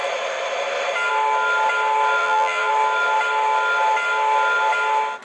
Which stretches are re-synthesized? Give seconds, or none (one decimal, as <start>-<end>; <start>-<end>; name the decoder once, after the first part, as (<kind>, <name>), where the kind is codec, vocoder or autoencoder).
2.2-2.7 (vocoder, BigVGAN v2)